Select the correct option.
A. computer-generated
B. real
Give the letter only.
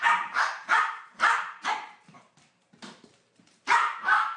A